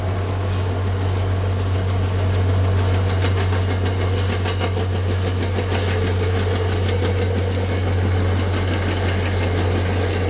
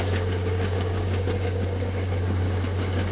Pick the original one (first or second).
first